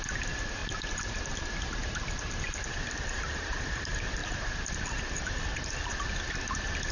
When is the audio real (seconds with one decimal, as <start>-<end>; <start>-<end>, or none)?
0.0-1.8; 3.1-4.2; 5.2-6.9

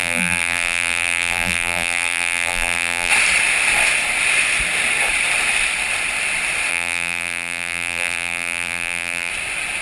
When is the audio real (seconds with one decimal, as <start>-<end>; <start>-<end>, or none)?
3.1-6.7; 9.3-9.8

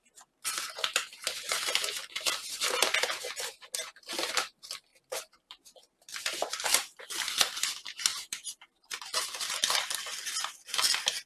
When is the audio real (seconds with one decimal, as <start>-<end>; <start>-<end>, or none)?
0.0-4.9; 7.0-8.1; 10.5-11.3